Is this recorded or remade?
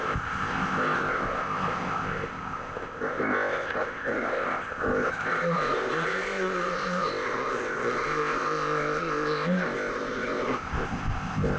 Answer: remade